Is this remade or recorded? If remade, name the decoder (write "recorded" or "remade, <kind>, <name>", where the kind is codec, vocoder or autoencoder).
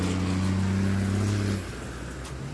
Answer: recorded